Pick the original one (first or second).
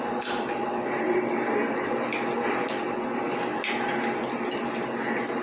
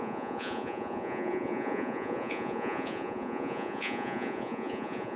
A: first